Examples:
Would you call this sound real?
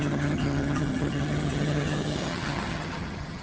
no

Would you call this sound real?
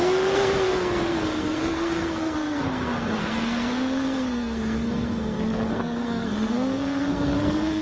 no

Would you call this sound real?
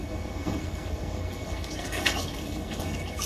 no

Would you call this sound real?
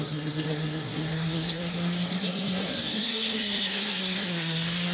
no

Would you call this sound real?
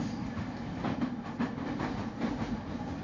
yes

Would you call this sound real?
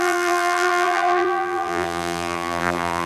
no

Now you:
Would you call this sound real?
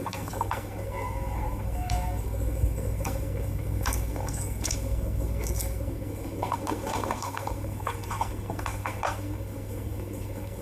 no